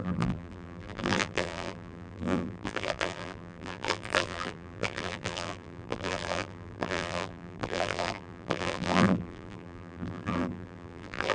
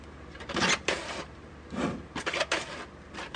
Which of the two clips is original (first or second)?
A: second